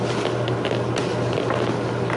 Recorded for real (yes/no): yes